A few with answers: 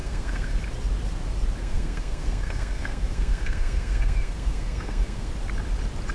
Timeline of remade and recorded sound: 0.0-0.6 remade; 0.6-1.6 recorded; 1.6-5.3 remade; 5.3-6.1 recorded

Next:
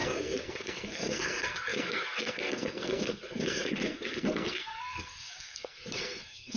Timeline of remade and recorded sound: 0.0-6.6 remade

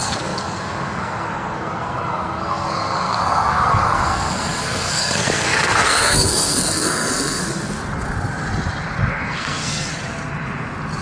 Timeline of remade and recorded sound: 0.0-7.8 remade; 7.8-9.1 recorded; 9.1-9.9 remade; 9.9-11.0 recorded

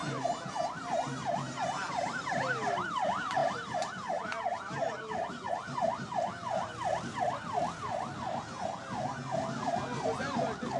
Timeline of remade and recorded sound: 0.0-10.8 recorded

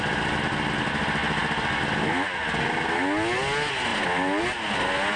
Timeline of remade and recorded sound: 0.0-5.2 recorded

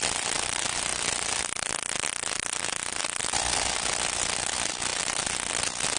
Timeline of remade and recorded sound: 0.0-6.0 recorded

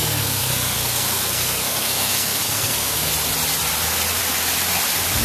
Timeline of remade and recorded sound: 0.0-3.1 remade; 3.1-5.2 recorded